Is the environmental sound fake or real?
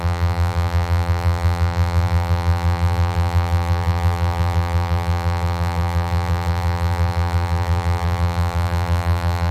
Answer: fake